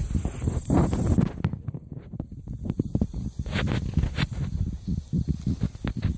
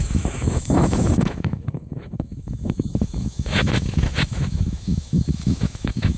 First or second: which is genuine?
first